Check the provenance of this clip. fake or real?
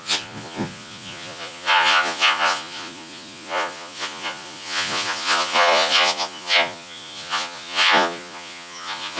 fake